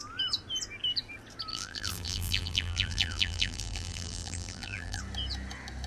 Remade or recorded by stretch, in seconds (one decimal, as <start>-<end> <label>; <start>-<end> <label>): 0.0-1.5 recorded; 1.5-5.0 remade; 5.0-5.9 recorded